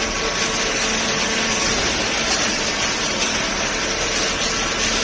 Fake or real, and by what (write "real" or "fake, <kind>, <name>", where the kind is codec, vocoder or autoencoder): real